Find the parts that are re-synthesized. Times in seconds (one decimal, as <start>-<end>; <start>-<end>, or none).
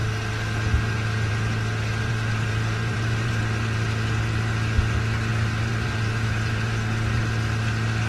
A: 2.1-3.4; 5.3-7.2